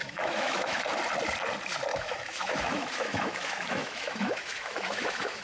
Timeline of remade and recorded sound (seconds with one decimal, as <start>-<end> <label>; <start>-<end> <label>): 0.0-0.8 remade; 0.8-1.9 recorded; 1.9-5.4 remade